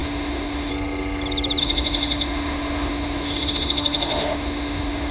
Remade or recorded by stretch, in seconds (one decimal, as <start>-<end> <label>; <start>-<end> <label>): 0.0-0.7 remade; 0.7-1.6 recorded; 1.6-5.1 remade